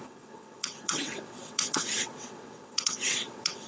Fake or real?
fake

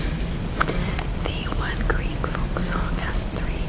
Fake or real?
real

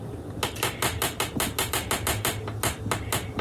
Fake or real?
real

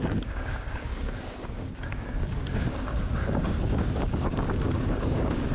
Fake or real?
fake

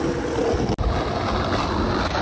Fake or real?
real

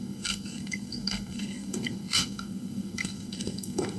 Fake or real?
fake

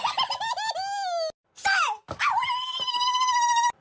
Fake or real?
real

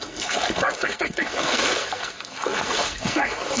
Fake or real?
fake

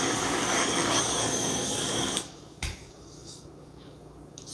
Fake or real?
fake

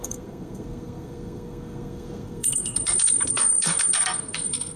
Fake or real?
fake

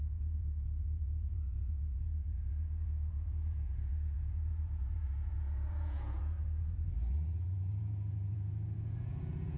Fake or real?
fake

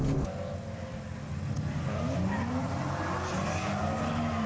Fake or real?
real